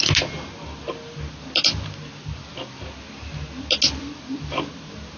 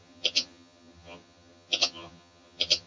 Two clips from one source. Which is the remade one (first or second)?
second